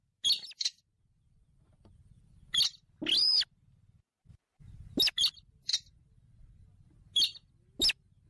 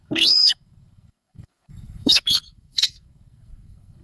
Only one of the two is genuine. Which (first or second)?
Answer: first